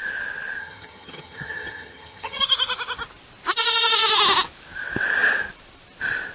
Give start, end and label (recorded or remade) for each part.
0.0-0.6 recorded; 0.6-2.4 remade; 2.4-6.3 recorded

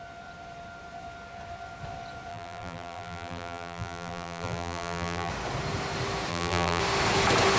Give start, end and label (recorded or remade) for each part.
0.0-2.3 recorded; 2.3-5.3 remade; 5.3-6.3 recorded; 6.3-6.8 remade; 6.8-7.6 recorded

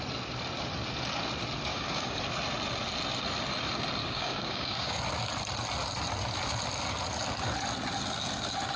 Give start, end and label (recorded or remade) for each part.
0.0-1.7 recorded; 1.7-2.2 remade; 2.2-4.0 recorded; 4.0-5.0 remade; 5.0-8.8 recorded

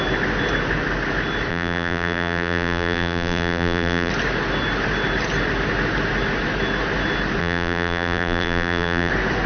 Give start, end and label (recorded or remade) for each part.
0.0-1.5 recorded; 1.5-4.1 remade; 4.1-7.4 recorded; 7.4-9.1 remade; 9.1-9.5 recorded

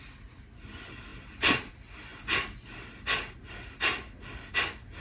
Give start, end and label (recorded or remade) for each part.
0.0-5.0 recorded